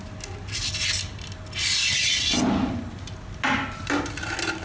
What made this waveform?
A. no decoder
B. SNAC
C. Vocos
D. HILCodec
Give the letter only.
A